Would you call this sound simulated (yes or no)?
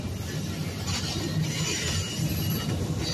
no